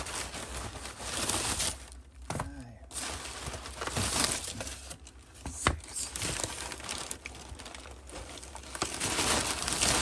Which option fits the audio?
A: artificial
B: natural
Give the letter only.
B